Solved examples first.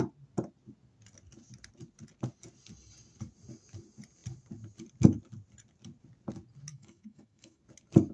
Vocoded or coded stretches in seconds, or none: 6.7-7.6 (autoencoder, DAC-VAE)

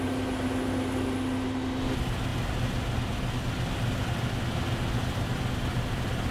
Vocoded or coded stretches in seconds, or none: none

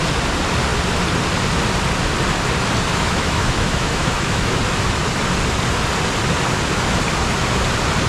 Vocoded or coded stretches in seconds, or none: 2.9-4.6 (autoencoder, DAC-VAE)

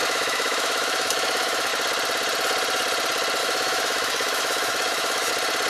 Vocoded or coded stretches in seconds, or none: 0.0-1.7 (autoencoder, DAC-VAE); 3.4-5.3

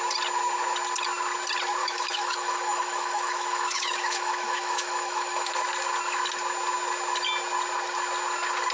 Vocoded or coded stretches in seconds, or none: 1.8-5.5 (autoencoder, DAC-VAE)

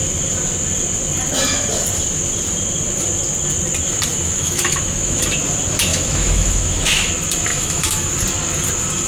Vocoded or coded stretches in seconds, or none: 4.1-5.2 (autoencoder, DAC-VAE); 5.9-7.1; 7.5-8.1

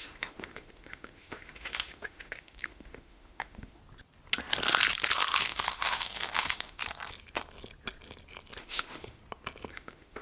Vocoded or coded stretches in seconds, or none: 0.0-3.8 (autoencoder, DAC-VAE); 5.4-6.8; 8.6-9.2; 9.7-10.2